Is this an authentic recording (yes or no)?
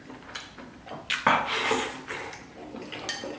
yes